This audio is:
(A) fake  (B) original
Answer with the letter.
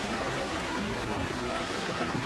A